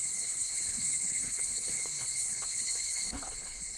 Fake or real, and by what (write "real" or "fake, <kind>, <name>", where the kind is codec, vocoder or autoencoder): fake, codec, HILCodec